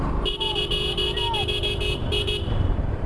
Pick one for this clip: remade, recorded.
recorded